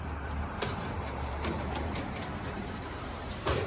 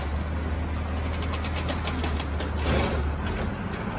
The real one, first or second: second